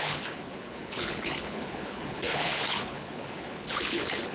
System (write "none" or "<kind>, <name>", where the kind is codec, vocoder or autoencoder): codec, HILCodec